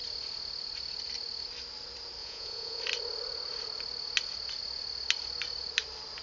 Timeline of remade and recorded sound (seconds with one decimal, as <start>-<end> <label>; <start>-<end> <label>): 0.0-2.2 recorded; 2.2-2.8 remade; 2.8-6.2 recorded